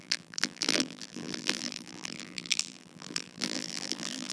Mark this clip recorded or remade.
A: remade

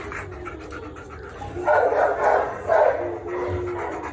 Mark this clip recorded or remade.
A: recorded